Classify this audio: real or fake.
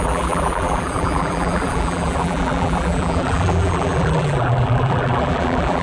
fake